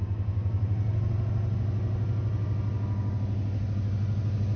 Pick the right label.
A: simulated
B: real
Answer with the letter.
B